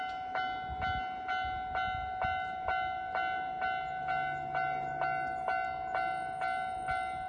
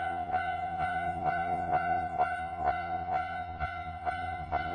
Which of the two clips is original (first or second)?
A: first